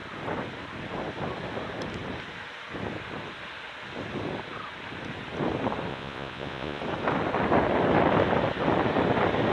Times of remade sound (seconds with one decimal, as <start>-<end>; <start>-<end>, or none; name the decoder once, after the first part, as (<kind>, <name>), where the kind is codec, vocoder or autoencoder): 5.9-6.8 (vocoder, Vocos)